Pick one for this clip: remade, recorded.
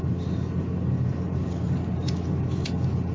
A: recorded